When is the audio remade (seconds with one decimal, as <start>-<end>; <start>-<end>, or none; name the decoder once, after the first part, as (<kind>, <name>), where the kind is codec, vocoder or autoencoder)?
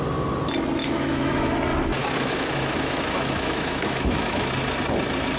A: 0.8-1.5 (autoencoder, DAC-VAE); 2.0-4.5